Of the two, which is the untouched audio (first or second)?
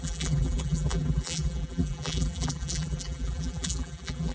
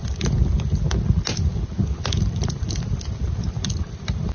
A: second